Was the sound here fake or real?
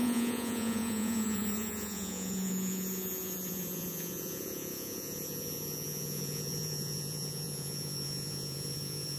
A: fake